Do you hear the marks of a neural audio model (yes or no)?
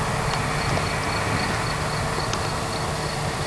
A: no